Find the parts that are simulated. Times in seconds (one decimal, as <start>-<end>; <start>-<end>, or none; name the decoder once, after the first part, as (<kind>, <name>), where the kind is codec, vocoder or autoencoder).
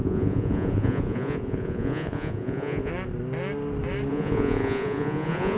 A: 0.0-2.9 (vocoder, Vocos); 4.1-5.6